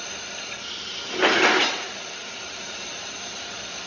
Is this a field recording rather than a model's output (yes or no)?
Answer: yes